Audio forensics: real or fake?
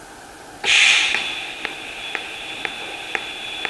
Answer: fake